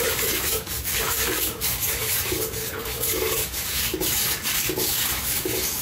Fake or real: fake